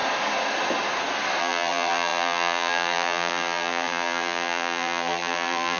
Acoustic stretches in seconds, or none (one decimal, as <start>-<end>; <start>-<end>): 0.0-1.4